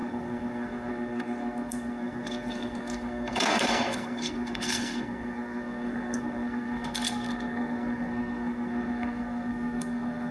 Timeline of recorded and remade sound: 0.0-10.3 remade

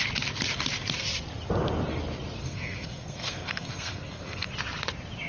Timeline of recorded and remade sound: 0.0-2.4 recorded; 2.4-4.5 remade; 4.5-5.3 recorded

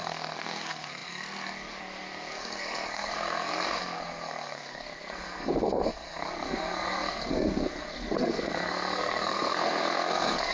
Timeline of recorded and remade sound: 0.0-10.5 remade

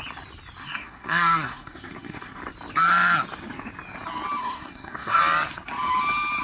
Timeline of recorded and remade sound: 0.0-0.6 recorded; 0.6-2.4 remade; 2.4-4.4 recorded; 4.4-5.2 remade; 5.2-6.4 recorded

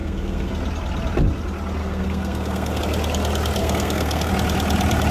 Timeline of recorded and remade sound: 0.0-0.5 remade; 0.5-1.8 recorded; 1.8-2.8 remade; 2.8-3.6 recorded; 3.6-4.3 remade; 4.3-5.1 recorded

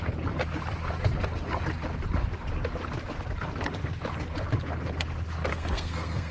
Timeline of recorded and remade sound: 0.0-5.5 recorded; 5.5-6.3 remade